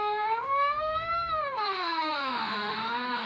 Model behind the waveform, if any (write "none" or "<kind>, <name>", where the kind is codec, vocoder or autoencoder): autoencoder, DAC-VAE